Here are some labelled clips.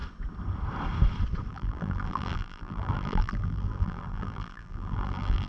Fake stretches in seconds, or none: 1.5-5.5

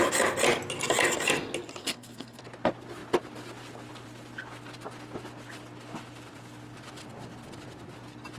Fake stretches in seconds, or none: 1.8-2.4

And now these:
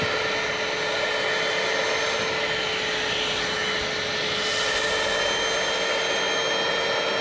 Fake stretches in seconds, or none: none